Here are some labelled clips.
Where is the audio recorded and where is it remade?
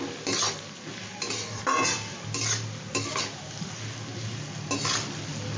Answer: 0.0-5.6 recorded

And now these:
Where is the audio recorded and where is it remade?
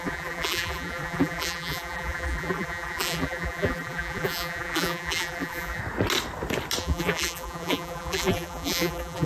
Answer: 0.0-5.8 remade; 5.8-6.8 recorded; 6.8-9.3 remade